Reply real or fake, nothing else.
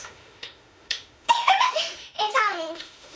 fake